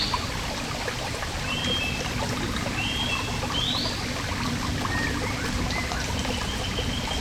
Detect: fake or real real